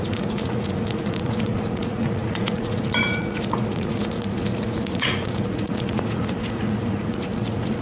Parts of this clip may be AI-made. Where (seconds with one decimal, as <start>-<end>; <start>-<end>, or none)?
0.0-7.8